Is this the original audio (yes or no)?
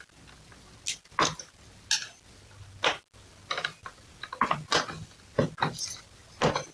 yes